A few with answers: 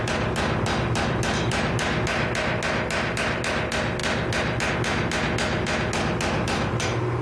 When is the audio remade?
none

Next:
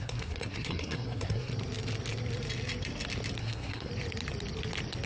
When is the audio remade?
0.0-1.5 (codec, SNAC); 3.4-3.9

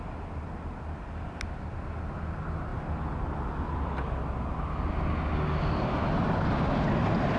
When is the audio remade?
none

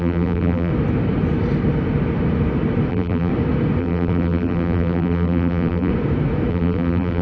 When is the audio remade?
0.0-0.7 (vocoder, BigVGAN v2); 2.9-3.3; 3.8-5.9; 6.5-7.2